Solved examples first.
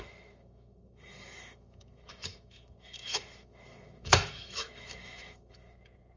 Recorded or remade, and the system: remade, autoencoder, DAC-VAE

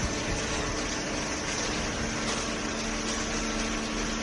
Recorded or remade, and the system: recorded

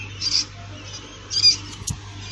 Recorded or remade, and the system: recorded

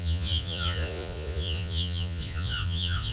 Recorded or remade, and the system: remade, vocoder, Vocos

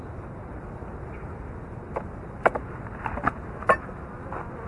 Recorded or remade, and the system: recorded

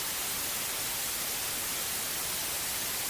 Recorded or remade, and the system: recorded